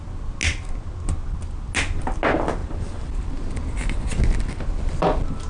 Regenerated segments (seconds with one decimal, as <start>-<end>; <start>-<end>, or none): none